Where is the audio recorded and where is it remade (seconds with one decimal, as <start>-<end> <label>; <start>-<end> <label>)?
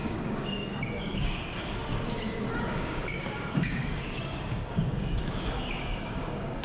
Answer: 0.0-1.8 remade; 1.8-2.5 recorded; 2.5-6.6 remade